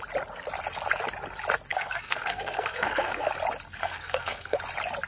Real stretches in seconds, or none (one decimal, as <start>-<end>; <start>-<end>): 0.0-1.7; 3.3-3.8; 4.6-5.1